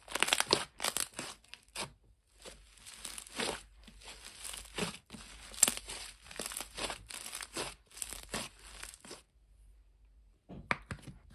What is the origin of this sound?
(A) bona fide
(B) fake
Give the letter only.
A